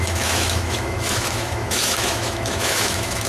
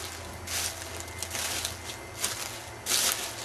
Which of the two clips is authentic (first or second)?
second